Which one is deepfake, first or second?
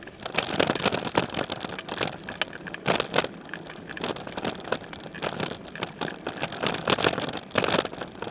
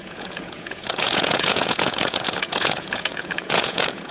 second